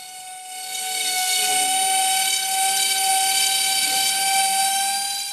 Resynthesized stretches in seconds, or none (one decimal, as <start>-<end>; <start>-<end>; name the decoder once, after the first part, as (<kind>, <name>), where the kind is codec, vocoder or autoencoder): 1.0-1.5 (codec, SNAC)